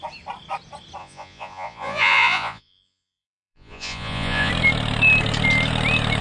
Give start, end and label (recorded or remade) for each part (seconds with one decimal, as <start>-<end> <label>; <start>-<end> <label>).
0.0-1.0 recorded; 1.0-4.5 remade; 4.5-6.2 recorded